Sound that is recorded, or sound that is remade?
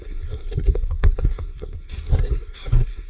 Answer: remade